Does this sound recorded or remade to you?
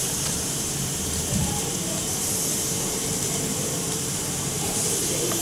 remade